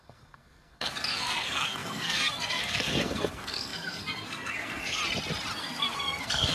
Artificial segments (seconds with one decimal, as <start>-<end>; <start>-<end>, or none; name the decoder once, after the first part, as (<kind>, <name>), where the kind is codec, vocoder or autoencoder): 0.0-5.0 (codec, SNAC); 5.6-6.5